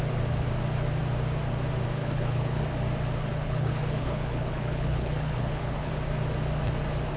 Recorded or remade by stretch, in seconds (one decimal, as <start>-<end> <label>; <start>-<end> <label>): 0.0-2.0 recorded; 2.0-2.6 remade; 2.6-3.3 recorded; 3.3-5.9 remade; 5.9-7.2 recorded